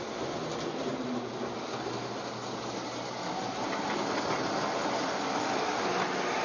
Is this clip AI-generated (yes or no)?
no